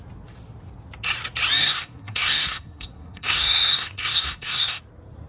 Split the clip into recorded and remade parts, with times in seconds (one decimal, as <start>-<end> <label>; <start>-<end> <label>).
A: 0.0-1.6 recorded; 1.6-4.8 remade; 4.8-5.3 recorded